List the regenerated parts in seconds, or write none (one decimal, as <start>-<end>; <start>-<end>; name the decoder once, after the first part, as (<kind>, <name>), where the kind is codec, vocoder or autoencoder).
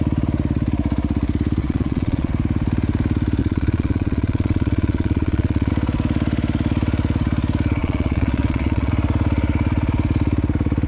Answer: 1.6-2.3 (vocoder, Vocos); 3.4-5.7; 7.8-8.9